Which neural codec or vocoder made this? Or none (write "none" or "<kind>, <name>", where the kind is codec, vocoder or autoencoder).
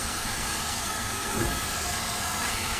codec, SNAC